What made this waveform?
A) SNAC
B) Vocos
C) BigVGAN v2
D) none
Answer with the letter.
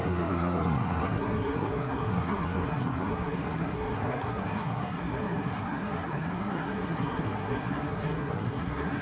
A